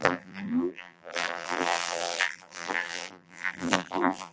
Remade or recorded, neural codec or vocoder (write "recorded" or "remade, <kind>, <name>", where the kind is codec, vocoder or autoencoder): remade, vocoder, BigVGAN v2